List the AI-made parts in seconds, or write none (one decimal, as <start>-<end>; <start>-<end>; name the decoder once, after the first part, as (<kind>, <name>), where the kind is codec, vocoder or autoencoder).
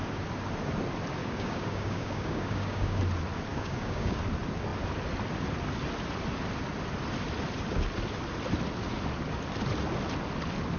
1.2-3.0 (codec, DAC); 3.5-4.2